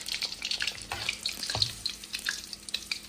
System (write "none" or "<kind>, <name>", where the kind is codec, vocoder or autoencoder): vocoder, BigVGAN v2